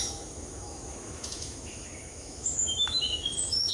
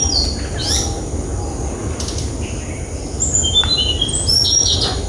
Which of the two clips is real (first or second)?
second